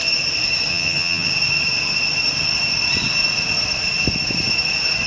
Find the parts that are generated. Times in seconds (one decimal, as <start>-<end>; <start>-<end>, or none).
0.7-1.3